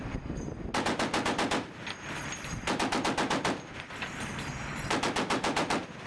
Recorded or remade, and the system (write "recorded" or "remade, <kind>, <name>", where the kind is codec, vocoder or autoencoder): recorded